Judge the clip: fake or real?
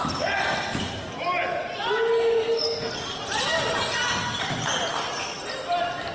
real